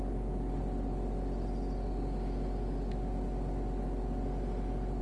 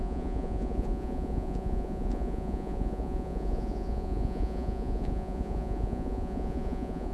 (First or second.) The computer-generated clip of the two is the second